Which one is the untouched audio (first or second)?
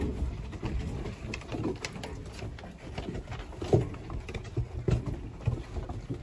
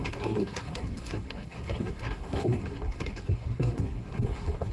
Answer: first